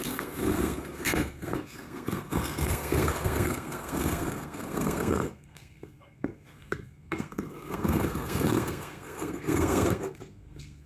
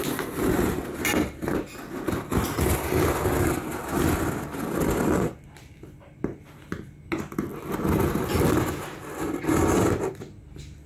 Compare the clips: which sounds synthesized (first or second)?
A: first